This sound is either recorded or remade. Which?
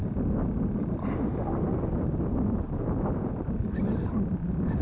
recorded